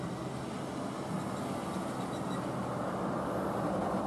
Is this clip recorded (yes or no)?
yes